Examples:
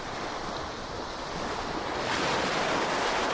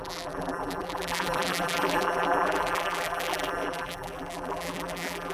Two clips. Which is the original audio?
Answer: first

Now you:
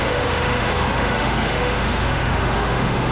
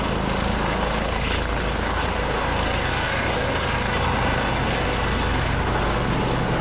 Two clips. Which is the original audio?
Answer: second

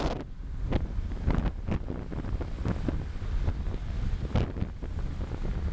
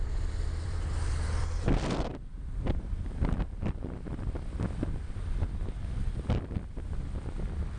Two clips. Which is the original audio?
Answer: first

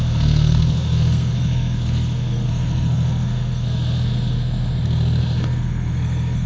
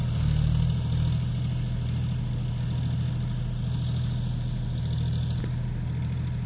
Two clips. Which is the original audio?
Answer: second